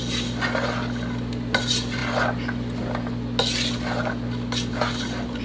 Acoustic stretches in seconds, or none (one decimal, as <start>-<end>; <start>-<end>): 0.0-5.4